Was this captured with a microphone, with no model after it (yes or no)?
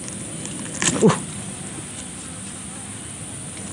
yes